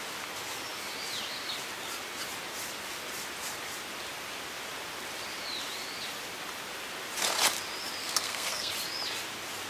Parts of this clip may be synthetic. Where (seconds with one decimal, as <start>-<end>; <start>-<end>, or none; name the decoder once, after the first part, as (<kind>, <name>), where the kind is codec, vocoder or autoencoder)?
8.0-8.7 (codec, SNAC)